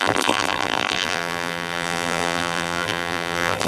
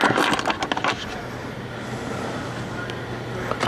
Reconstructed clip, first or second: first